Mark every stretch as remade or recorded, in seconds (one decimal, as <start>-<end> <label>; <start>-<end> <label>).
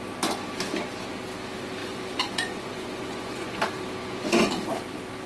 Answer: 0.0-1.8 recorded; 1.8-3.6 remade; 3.6-4.0 recorded; 4.0-4.5 remade; 4.5-5.3 recorded